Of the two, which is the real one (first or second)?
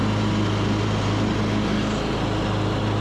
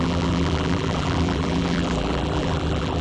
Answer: first